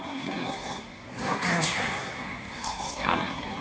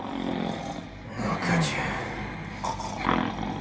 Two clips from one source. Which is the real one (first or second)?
second